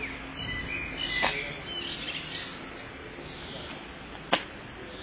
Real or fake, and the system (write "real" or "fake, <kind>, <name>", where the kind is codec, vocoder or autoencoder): real